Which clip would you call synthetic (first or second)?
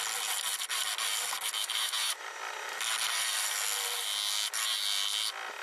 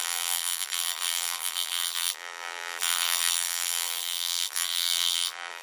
second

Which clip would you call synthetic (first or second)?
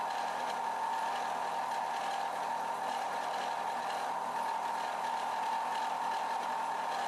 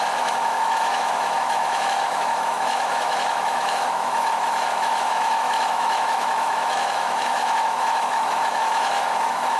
second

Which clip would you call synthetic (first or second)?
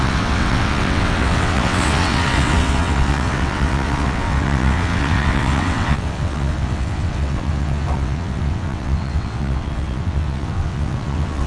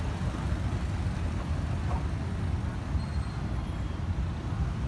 first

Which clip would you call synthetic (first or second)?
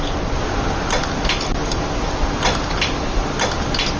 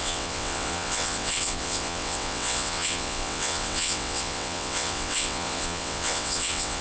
second